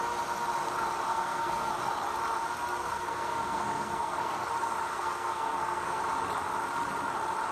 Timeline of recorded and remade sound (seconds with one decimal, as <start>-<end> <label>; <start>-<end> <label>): 0.0-1.1 recorded; 1.1-1.7 remade; 1.7-2.8 recorded; 2.8-4.5 remade; 4.5-4.9 recorded; 4.9-6.0 remade; 6.0-7.5 recorded